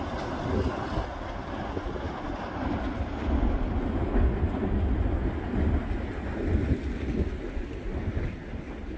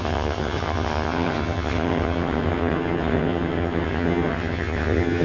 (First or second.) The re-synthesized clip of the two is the second